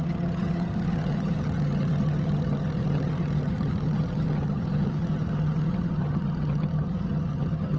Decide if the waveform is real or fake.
fake